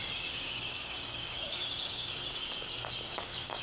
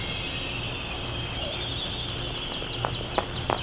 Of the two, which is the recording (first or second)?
second